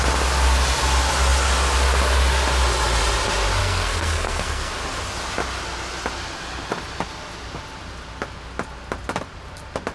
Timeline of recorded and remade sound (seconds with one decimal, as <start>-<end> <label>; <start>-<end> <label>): 0.0-3.6 recorded; 3.6-4.7 remade; 4.7-9.9 recorded